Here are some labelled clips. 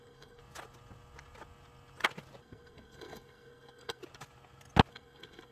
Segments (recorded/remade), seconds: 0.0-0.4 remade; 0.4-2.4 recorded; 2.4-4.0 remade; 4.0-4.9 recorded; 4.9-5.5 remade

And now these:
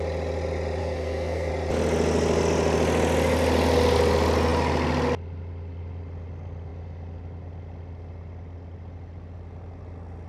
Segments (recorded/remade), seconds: 0.0-0.8 recorded; 0.8-1.5 remade; 1.5-10.3 recorded

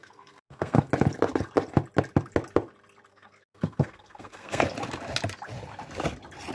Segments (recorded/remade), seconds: 0.0-0.9 remade; 0.9-3.1 recorded; 3.1-4.7 remade; 4.7-6.5 recorded

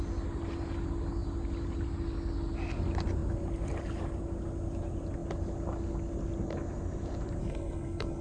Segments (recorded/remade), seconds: 0.0-7.4 recorded; 7.4-8.2 remade

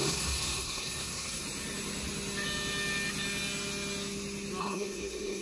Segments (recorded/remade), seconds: 0.0-1.4 remade; 1.4-4.6 recorded; 4.6-5.4 remade